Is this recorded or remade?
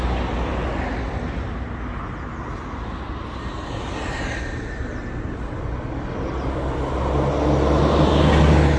recorded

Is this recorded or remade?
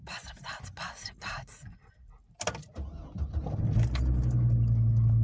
recorded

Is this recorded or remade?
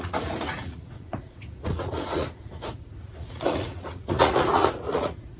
remade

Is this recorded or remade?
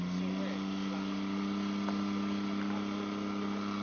recorded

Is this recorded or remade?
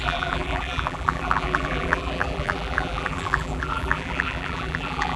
remade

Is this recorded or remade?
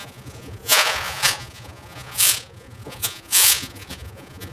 remade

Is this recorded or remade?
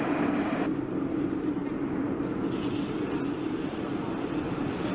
recorded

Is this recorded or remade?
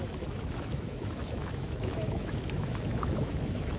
remade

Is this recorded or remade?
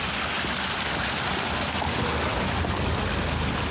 recorded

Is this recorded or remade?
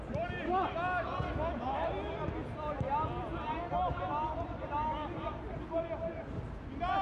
recorded